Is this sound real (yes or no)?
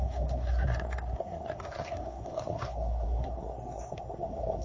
no